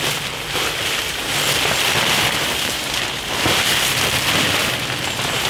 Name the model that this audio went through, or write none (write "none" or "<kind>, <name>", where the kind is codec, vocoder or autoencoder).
none